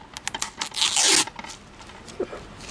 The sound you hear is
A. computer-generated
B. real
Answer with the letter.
B